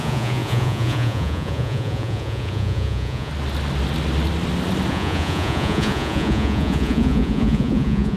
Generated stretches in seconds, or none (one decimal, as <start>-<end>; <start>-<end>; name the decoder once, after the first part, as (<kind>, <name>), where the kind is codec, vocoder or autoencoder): 0.0-3.3 (vocoder, Vocos); 4.9-8.2